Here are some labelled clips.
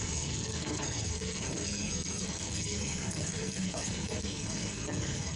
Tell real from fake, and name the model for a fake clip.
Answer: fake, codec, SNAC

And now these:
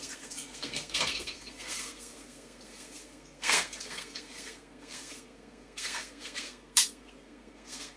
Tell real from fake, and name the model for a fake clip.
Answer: fake, codec, SNAC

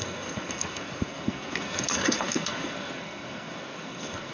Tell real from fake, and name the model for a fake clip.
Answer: fake, codec, SNAC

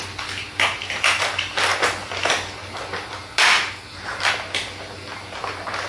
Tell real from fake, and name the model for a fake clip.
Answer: real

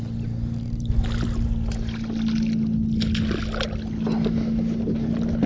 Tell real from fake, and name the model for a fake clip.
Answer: real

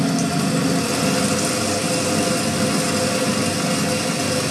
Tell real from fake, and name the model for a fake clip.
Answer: real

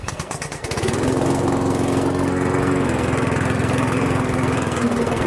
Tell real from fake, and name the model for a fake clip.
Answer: fake, codec, SNAC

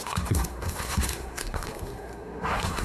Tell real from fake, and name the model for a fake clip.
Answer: fake, codec, SNAC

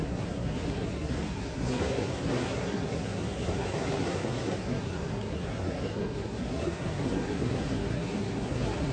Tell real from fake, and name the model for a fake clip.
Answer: fake, codec, SNAC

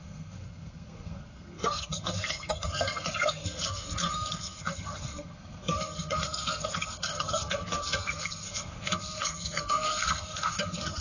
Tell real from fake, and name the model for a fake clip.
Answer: fake, codec, SNAC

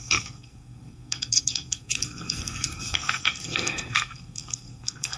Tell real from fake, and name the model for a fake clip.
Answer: fake, codec, SNAC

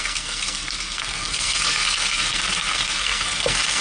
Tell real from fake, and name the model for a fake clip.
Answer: fake, codec, SNAC